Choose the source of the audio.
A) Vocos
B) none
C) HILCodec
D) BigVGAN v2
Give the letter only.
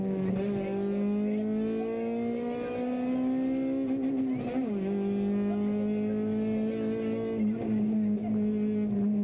B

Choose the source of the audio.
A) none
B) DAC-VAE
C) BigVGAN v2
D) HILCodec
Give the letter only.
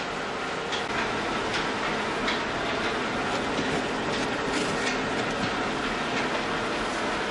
A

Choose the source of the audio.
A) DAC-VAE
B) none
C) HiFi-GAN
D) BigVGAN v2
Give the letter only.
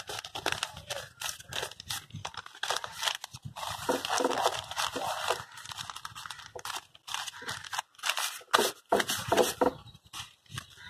B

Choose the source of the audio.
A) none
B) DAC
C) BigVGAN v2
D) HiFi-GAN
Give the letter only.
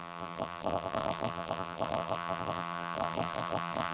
C